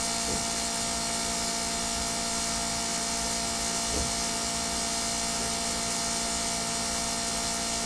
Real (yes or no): yes